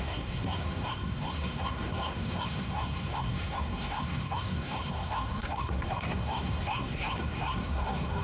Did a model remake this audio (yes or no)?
yes